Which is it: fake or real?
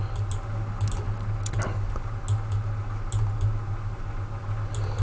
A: real